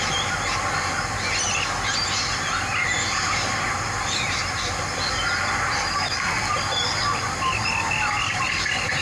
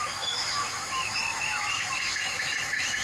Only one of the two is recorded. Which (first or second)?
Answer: first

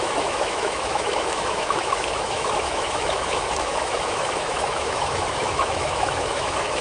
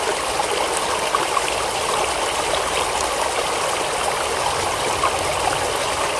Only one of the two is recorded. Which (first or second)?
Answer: second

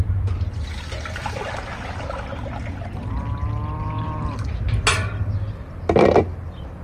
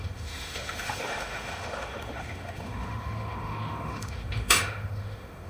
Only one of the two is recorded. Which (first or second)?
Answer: first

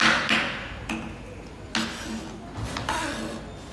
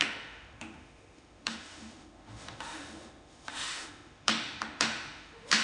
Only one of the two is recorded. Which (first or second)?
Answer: first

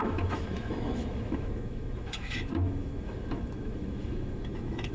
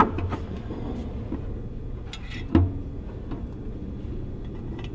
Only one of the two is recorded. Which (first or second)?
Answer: second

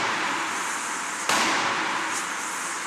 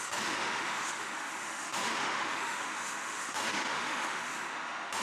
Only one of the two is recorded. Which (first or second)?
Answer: first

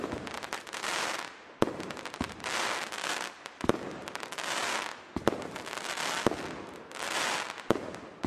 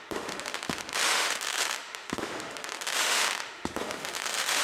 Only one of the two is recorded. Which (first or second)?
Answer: first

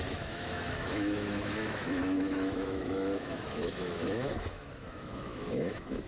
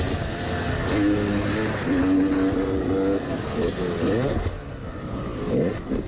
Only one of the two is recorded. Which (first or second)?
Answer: second